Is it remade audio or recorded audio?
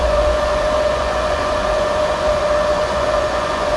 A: remade